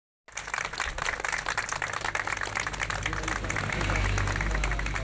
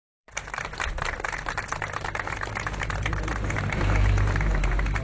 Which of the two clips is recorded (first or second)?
first